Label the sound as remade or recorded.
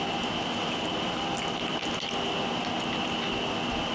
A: recorded